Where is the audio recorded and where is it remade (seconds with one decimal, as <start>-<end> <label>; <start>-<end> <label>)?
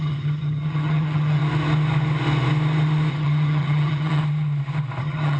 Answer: 0.0-1.4 remade; 1.4-3.1 recorded; 3.1-4.2 remade; 4.2-5.0 recorded; 5.0-5.4 remade